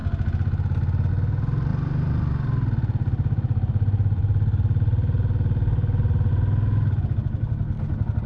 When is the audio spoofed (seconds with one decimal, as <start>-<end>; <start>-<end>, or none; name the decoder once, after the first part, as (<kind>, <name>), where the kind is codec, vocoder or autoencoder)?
1.7-6.3 (vocoder, BigVGAN v2)